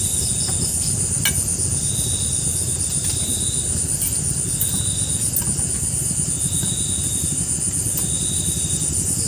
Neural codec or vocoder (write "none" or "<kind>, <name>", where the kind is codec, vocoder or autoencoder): none